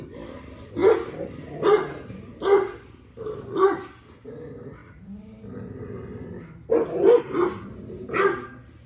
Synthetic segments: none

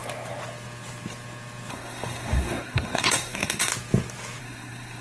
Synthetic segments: 1.7-3.7 (codec, SNAC); 4.4-5.0

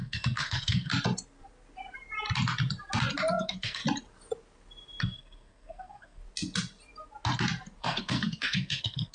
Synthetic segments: 0.0-0.9 (codec, SNAC); 3.4-3.8; 5.0-6.2; 7.8-9.1